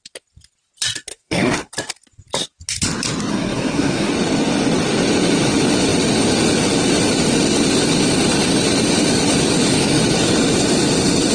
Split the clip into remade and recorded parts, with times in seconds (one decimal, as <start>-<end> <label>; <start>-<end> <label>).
0.0-1.1 recorded; 1.1-1.7 remade; 1.7-3.3 recorded; 3.3-4.1 remade; 4.1-11.3 recorded